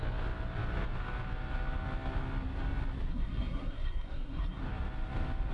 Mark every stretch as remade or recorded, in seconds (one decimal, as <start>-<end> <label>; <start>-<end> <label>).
0.0-3.1 recorded; 3.1-4.6 remade; 4.6-5.5 recorded